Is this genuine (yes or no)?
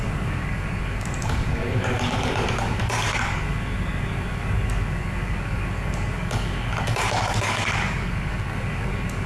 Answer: no